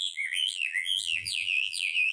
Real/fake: fake